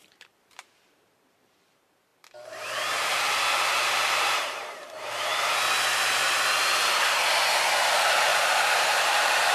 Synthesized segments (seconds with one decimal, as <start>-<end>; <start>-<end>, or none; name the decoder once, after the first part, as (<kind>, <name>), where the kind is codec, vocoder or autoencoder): 0.0-5.3 (vocoder, BigVGAN v2); 7.8-8.3; 8.8-9.5

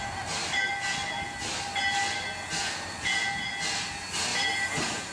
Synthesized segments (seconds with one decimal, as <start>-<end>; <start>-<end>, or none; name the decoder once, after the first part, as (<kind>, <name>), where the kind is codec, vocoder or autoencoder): 4.3-5.1 (vocoder, BigVGAN v2)

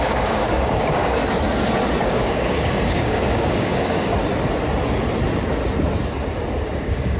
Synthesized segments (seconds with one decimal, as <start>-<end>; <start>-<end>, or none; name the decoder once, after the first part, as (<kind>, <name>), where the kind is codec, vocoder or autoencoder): 0.0-1.2 (codec, DAC); 2.1-4.1; 6.8-7.2

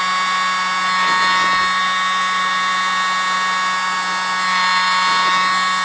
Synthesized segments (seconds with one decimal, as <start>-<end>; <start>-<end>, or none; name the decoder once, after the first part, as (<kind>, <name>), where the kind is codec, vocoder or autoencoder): none